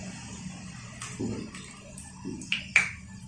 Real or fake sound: real